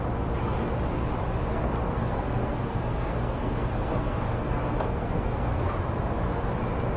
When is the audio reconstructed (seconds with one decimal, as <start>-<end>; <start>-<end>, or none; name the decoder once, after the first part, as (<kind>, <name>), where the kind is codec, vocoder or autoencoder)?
1.5-5.7 (codec, SNAC)